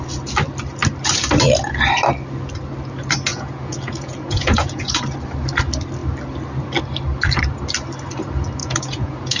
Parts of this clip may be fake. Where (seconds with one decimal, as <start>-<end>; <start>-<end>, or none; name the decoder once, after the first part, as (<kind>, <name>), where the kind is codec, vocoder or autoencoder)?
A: 3.3-5.0 (vocoder, Vocos); 8.6-9.4